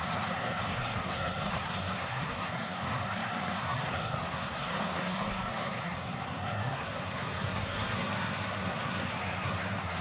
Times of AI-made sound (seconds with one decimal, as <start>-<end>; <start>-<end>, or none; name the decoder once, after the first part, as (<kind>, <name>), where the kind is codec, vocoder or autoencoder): 0.0-10.0 (codec, SNAC)